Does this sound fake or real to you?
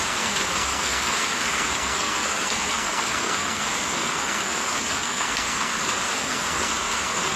fake